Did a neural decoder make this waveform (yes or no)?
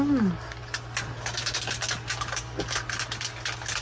no